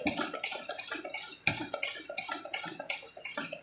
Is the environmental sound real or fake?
real